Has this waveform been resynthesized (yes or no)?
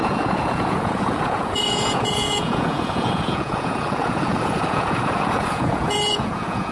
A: yes